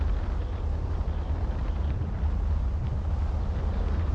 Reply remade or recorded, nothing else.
recorded